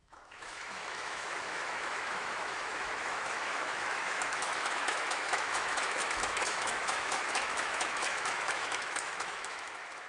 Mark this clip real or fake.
fake